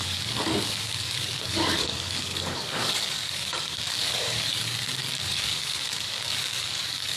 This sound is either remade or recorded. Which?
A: remade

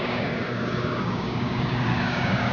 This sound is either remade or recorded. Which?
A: remade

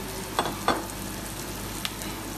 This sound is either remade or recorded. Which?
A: recorded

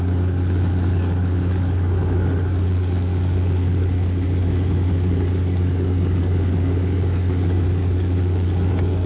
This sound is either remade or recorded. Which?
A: remade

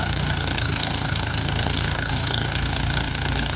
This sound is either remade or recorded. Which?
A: remade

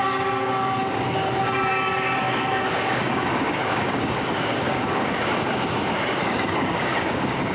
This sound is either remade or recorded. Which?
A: remade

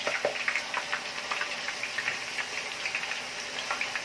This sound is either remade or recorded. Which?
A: recorded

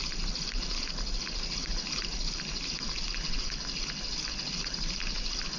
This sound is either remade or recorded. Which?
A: recorded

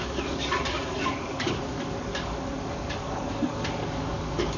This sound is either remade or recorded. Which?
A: remade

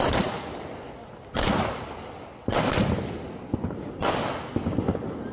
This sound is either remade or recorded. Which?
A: recorded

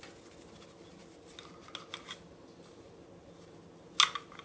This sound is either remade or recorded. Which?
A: recorded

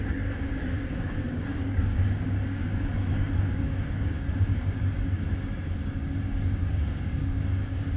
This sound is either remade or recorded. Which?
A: remade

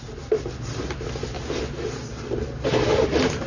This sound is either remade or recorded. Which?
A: recorded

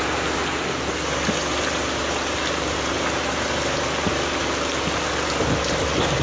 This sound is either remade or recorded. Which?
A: recorded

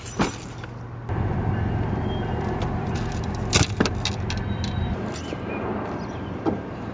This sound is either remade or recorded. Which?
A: recorded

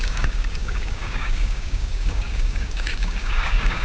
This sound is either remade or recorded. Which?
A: remade